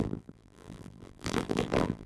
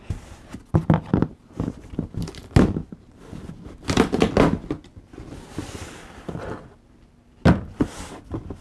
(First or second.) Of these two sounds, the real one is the second